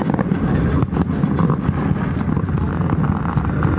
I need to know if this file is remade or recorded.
recorded